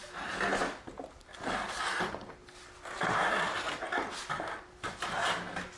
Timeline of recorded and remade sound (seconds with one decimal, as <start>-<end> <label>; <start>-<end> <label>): 0.0-5.8 recorded